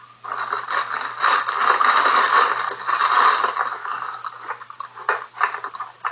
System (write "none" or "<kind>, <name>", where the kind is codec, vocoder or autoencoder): none